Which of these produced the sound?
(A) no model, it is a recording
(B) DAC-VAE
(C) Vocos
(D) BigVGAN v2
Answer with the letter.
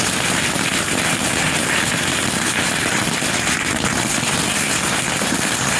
A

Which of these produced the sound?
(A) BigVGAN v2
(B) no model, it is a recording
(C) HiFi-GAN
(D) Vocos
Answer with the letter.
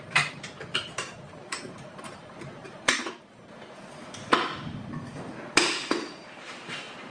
A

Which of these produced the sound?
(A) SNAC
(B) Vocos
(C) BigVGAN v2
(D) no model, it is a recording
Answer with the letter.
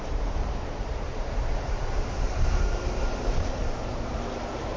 C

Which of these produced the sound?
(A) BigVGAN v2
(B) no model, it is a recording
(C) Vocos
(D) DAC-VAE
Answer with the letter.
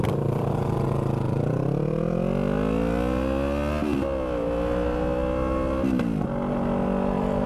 B